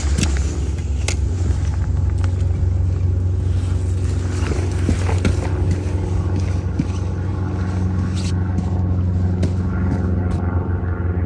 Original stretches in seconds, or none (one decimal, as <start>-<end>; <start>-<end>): 0.0-11.3